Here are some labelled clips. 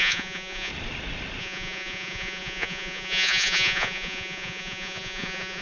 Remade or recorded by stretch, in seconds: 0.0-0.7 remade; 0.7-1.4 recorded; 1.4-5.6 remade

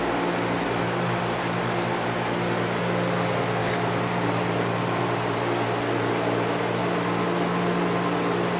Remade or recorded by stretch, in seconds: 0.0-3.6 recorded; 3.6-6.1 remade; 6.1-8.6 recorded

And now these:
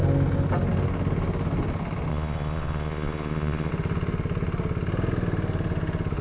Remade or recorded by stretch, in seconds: 0.0-2.1 recorded; 2.1-3.7 remade; 3.7-6.2 recorded

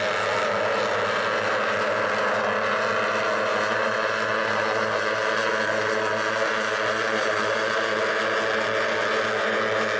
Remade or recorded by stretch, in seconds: 0.0-3.5 recorded; 3.5-8.0 remade; 8.0-10.0 recorded

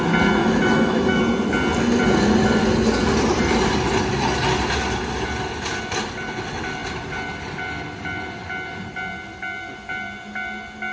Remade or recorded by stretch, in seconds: 0.0-0.4 recorded; 0.4-1.2 remade; 1.2-10.9 recorded

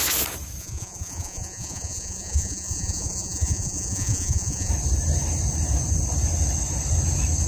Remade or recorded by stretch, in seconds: 0.0-0.6 recorded; 0.6-4.7 remade; 4.7-7.5 recorded

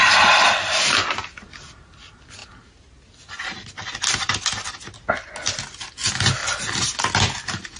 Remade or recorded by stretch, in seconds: 0.0-7.8 recorded